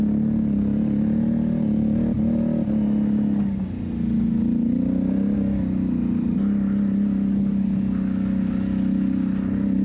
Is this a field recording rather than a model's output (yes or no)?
yes